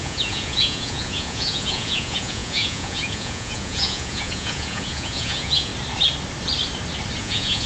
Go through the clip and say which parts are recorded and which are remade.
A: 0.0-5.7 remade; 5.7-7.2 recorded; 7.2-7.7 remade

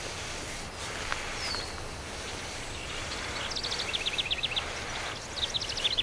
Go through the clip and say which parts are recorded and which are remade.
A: 0.0-6.0 recorded

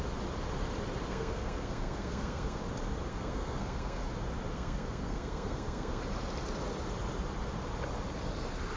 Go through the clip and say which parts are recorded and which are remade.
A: 0.0-1.1 recorded; 1.1-2.6 remade; 2.6-3.1 recorded; 3.1-4.1 remade; 4.1-4.5 recorded; 4.5-6.0 remade; 6.0-8.8 recorded

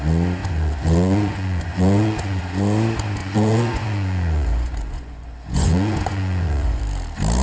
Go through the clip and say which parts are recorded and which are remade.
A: 0.0-0.4 recorded; 0.4-2.4 remade; 2.4-3.2 recorded; 3.2-6.8 remade; 6.8-7.4 recorded

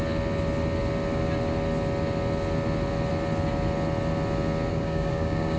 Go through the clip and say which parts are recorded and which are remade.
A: 0.0-4.7 recorded; 4.7-5.6 remade

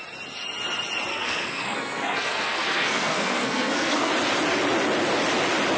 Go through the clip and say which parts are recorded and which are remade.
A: 0.0-1.1 recorded; 1.1-4.1 remade; 4.1-5.8 recorded

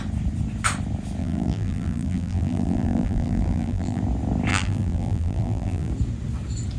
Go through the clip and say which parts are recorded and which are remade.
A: 0.0-1.2 recorded; 1.2-4.0 remade; 4.0-4.5 recorded; 4.5-5.9 remade; 5.9-6.8 recorded

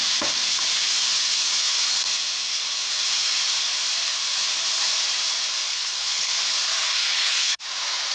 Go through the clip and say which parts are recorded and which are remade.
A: 0.0-5.7 recorded; 5.7-6.4 remade; 6.4-7.0 recorded; 7.0-7.6 remade; 7.6-8.1 recorded